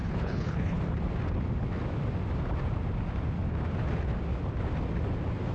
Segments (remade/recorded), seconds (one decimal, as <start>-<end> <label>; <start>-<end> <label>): 0.0-0.8 remade; 0.8-5.5 recorded